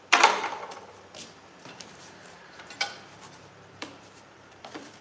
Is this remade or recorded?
remade